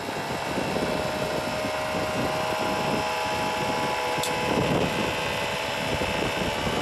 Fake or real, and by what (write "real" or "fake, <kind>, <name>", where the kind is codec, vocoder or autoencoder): real